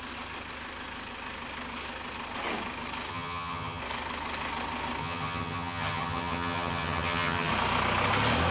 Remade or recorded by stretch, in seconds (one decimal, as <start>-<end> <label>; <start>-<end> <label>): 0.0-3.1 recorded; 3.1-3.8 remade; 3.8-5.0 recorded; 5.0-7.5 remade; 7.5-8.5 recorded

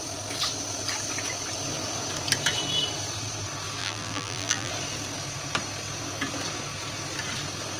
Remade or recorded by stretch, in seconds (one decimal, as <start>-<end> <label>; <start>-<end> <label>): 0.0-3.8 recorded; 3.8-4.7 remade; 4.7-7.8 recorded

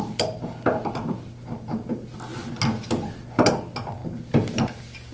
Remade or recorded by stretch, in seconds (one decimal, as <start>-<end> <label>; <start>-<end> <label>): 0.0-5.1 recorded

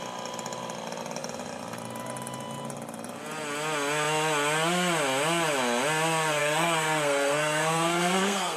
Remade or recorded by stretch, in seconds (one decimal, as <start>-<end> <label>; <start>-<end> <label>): 0.0-6.4 recorded; 6.4-8.6 remade

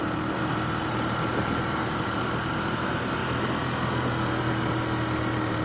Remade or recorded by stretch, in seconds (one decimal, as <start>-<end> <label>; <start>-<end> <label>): 0.0-5.6 recorded

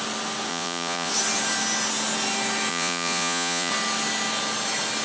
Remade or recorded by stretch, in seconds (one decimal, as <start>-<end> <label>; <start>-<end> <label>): 0.0-0.5 recorded; 0.5-1.1 remade; 1.1-2.7 recorded; 2.7-3.7 remade; 3.7-5.0 recorded